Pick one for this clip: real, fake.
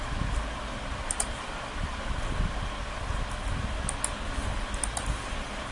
real